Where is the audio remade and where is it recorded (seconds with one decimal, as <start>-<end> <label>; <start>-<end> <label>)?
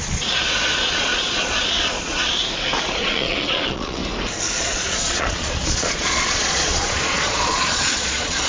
0.0-2.4 remade; 2.4-3.0 recorded; 3.0-4.0 remade; 4.0-4.6 recorded; 4.6-8.5 remade